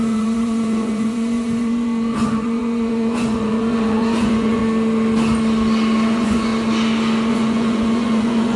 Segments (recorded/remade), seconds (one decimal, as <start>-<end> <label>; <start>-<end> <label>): 0.0-4.6 remade; 4.6-6.1 recorded; 6.1-6.5 remade; 6.5-7.3 recorded; 7.3-8.6 remade